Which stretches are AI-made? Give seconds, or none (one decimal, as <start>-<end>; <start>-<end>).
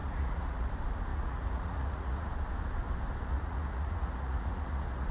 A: 0.0-0.7; 1.1-2.3; 3.3-5.1